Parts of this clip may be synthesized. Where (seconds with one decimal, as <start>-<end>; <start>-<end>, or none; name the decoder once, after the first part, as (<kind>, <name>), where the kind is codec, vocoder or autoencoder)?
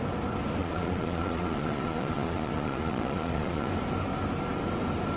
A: 0.6-3.7 (vocoder, Vocos)